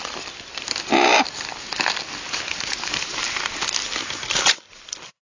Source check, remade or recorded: recorded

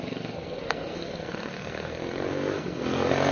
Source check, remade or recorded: remade